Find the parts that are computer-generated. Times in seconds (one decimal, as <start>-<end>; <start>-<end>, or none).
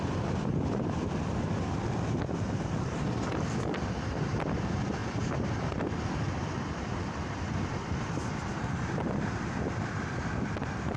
0.0-11.0